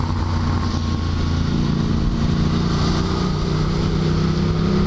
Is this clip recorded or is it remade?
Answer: recorded